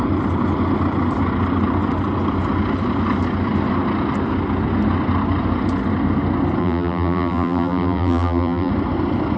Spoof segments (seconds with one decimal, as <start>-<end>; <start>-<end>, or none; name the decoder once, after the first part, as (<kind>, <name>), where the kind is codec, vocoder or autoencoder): 6.6-8.7 (vocoder, BigVGAN v2)